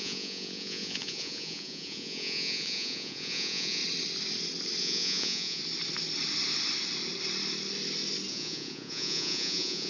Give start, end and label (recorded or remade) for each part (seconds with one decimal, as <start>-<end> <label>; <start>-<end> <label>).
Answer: 0.0-3.8 remade; 3.8-4.8 recorded; 4.8-5.6 remade; 5.6-8.3 recorded; 8.3-9.9 remade